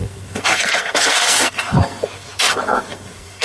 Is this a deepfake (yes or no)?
yes